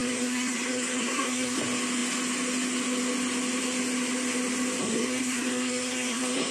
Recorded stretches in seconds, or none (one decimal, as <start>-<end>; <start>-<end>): 1.6-4.8